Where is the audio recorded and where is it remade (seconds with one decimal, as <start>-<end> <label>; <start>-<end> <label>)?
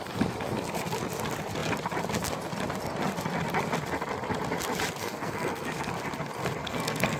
0.0-5.0 recorded; 5.0-5.9 remade; 5.9-6.6 recorded; 6.6-7.2 remade